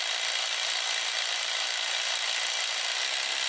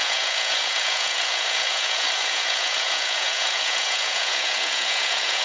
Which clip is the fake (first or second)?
second